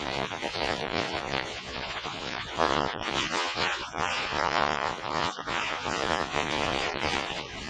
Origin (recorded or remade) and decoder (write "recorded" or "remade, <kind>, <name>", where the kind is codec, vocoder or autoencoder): remade, vocoder, Vocos